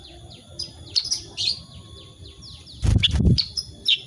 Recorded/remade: recorded